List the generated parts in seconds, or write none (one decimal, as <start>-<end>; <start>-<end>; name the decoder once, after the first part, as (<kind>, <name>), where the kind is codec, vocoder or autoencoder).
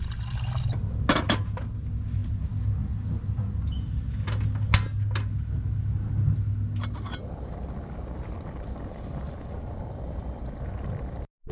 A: none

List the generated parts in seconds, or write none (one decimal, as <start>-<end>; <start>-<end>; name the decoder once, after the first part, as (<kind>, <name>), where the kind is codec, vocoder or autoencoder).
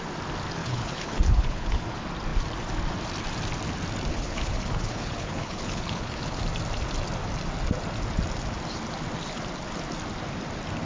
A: 0.6-1.8 (codec, HILCodec); 4.1-6.4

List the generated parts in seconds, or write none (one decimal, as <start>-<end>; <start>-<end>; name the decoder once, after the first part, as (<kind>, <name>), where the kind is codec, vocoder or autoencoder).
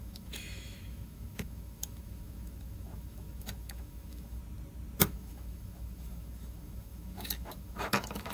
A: 0.0-4.4 (autoencoder, DAC-VAE); 5.0-8.3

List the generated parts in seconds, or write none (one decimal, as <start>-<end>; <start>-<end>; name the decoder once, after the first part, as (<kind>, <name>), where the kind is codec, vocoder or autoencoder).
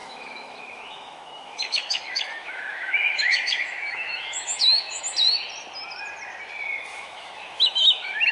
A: 0.0-5.0 (autoencoder, DAC-VAE); 6.9-8.3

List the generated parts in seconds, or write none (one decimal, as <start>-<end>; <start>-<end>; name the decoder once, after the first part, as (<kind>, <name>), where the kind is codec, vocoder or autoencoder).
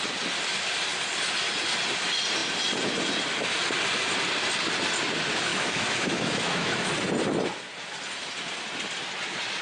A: 5.5-6.9 (autoencoder, DAC-VAE)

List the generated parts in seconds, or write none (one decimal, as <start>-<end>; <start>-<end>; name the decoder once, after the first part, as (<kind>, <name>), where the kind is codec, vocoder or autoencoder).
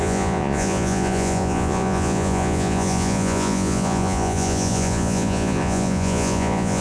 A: 0.0-6.8 (vocoder, Vocos)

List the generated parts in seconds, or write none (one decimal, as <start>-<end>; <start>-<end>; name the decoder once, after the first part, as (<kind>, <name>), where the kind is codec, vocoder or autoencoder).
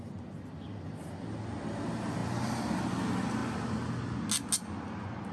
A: none